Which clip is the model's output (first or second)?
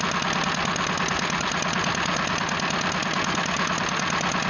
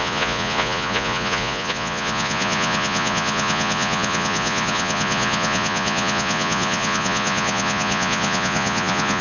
second